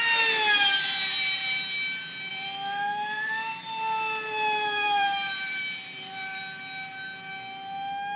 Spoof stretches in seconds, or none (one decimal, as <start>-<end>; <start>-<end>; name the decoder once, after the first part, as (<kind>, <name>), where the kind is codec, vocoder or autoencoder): 2.3-6.4 (vocoder, BigVGAN v2)